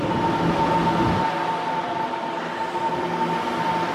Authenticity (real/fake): real